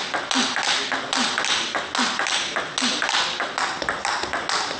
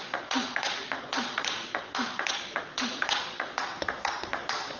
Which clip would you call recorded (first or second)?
first